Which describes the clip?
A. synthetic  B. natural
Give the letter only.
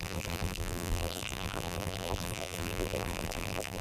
A